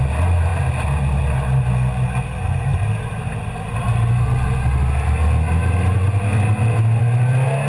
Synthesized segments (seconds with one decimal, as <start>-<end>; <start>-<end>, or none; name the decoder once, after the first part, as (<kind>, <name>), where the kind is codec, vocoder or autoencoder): none